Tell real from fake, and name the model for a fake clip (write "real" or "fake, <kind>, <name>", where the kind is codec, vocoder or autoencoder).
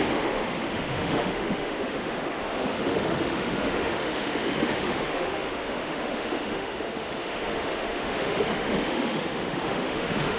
fake, autoencoder, DAC-VAE